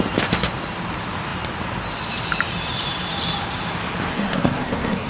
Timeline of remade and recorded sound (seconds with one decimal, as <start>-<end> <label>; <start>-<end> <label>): 0.0-4.1 recorded; 4.1-5.1 remade